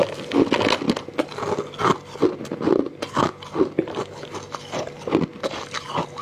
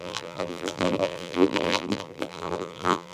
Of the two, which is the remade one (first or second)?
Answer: second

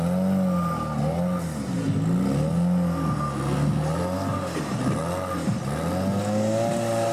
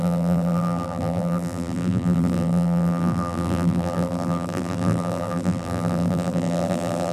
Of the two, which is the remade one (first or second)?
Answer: second